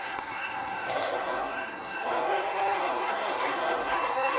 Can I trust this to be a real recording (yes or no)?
no